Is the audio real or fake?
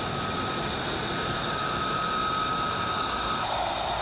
real